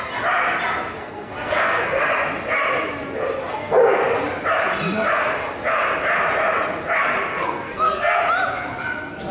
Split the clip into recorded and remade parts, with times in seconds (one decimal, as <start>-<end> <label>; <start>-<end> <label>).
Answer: 0.0-1.0 recorded; 1.0-2.0 remade; 2.0-3.5 recorded; 3.5-4.0 remade; 4.0-7.3 recorded; 7.3-8.2 remade; 8.2-9.3 recorded